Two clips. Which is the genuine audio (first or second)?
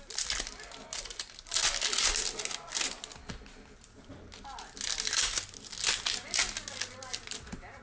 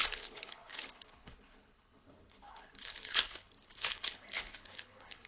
first